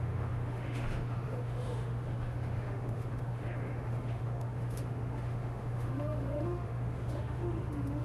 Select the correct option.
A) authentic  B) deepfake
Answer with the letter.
B